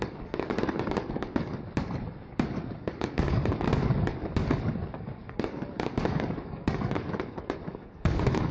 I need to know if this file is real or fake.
fake